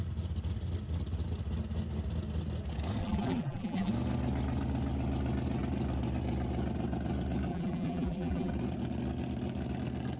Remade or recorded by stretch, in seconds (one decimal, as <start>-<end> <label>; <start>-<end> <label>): 0.0-3.0 recorded; 3.0-3.9 remade; 3.9-7.5 recorded; 7.5-8.5 remade; 8.5-10.2 recorded